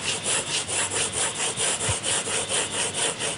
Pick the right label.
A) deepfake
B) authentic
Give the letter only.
A